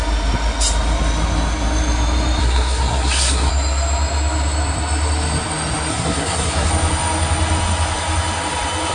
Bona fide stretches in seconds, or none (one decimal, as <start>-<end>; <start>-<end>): 0.0-2.4; 3.5-5.9; 6.7-8.9